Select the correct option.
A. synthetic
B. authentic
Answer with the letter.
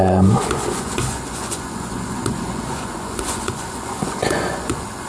A